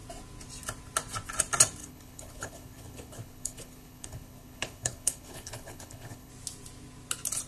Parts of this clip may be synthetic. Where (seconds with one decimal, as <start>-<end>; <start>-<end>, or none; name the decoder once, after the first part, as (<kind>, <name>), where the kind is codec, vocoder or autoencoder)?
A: 1.8-6.3 (codec, HILCodec)